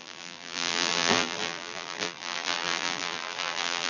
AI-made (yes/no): yes